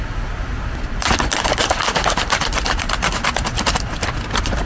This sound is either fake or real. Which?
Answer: real